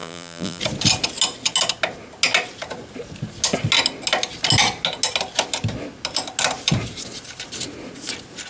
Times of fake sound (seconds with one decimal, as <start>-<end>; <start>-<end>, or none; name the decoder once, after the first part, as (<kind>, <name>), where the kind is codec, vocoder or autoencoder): 0.0-0.6 (vocoder, BigVGAN v2)